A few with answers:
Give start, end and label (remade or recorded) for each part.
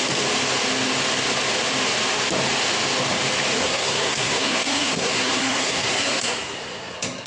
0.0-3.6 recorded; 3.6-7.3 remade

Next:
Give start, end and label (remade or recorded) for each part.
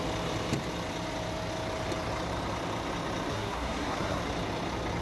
0.0-3.3 recorded; 3.3-4.2 remade; 4.2-5.0 recorded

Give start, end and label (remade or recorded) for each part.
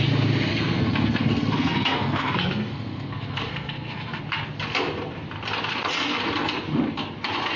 0.0-0.5 recorded; 0.5-4.2 remade; 4.2-7.6 recorded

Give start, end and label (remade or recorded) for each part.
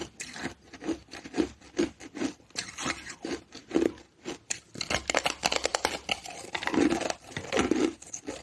0.0-8.4 recorded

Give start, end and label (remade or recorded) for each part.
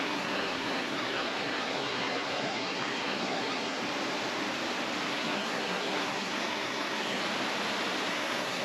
0.0-3.8 remade; 3.8-5.1 recorded; 5.1-7.2 remade; 7.2-8.1 recorded; 8.1-8.6 remade